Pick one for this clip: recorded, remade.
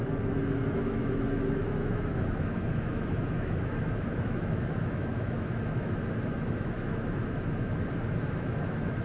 remade